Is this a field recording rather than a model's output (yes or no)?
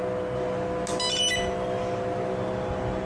yes